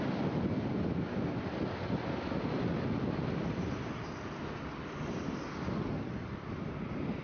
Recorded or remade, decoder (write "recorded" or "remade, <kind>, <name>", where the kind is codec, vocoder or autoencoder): recorded